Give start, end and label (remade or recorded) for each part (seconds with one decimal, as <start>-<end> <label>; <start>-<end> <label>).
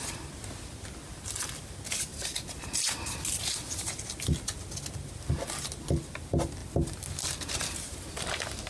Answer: 0.0-2.1 recorded; 2.1-3.4 remade; 3.4-6.6 recorded; 6.6-7.7 remade; 7.7-8.7 recorded